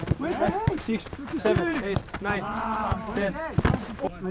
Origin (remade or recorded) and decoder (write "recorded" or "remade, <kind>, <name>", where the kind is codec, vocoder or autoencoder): remade, vocoder, BigVGAN v2